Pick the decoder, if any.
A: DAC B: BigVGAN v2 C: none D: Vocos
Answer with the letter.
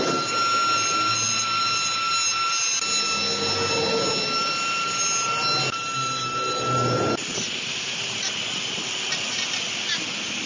C